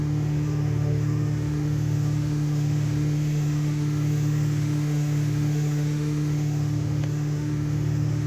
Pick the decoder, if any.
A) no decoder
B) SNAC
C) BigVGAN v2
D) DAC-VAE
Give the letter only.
D